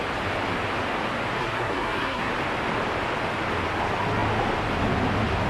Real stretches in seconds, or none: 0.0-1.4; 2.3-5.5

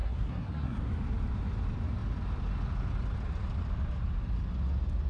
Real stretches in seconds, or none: 0.8-5.1

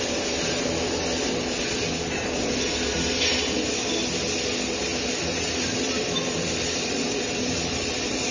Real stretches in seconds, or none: 0.0-4.9

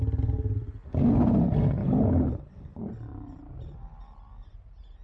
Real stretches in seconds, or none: 0.0-1.8; 2.9-5.0

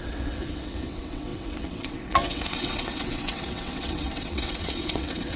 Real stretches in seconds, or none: none

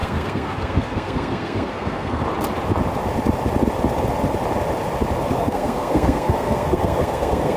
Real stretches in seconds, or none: 2.2-5.4